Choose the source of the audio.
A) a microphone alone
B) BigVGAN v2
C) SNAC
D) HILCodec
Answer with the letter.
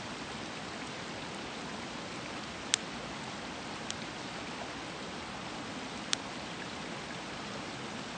A